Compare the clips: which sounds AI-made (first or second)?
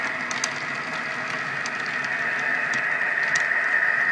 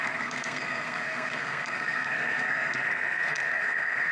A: second